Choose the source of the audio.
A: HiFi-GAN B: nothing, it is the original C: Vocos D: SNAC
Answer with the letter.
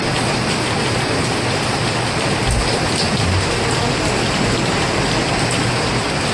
B